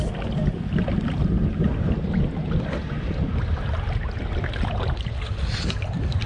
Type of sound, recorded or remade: recorded